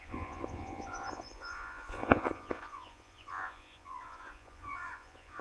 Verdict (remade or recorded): remade